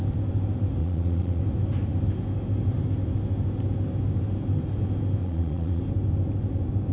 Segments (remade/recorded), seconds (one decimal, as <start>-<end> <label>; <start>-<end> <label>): 0.0-0.8 recorded; 0.8-1.4 remade; 1.4-5.2 recorded; 5.2-5.8 remade; 5.8-6.9 recorded